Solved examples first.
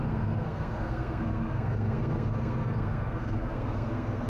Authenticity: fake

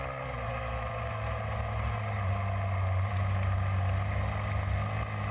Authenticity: real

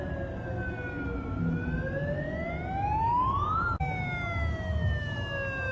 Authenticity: real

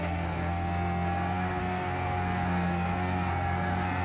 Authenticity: fake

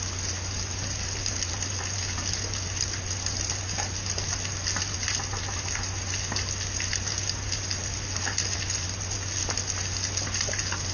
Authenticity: real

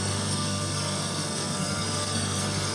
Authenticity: fake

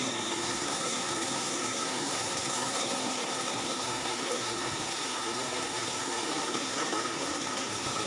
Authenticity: fake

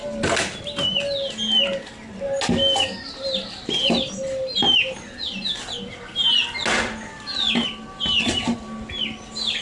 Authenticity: real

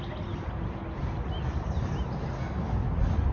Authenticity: real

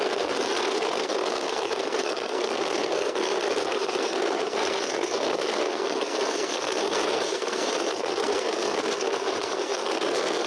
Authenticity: fake